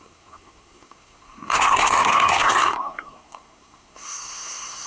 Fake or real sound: fake